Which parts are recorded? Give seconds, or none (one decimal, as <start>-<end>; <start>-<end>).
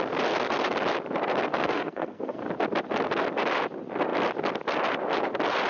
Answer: 0.0-1.5; 2.4-5.7